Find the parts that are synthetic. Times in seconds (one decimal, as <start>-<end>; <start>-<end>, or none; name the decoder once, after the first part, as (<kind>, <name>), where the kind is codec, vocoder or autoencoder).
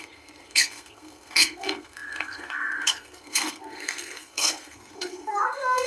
0.0-5.9 (codec, SNAC)